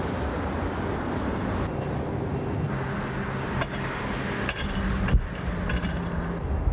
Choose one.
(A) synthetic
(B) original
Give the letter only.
B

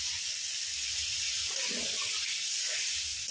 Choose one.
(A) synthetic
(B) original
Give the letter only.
B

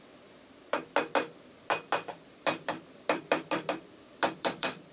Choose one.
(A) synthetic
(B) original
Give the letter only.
A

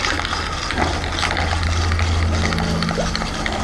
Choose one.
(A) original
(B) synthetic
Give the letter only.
A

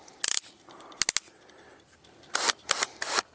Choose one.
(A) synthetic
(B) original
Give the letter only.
B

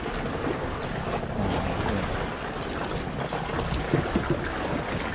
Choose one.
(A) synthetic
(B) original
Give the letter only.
B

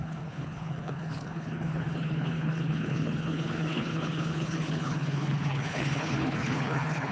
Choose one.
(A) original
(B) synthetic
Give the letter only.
B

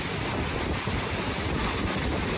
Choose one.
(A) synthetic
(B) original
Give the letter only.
B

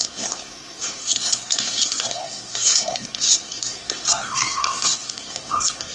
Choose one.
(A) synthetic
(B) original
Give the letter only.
A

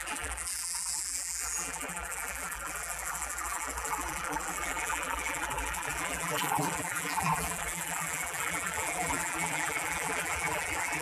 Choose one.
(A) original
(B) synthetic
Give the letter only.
B